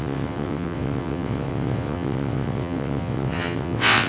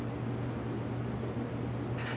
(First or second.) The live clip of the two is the second